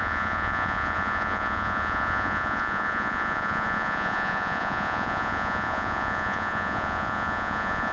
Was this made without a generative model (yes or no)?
no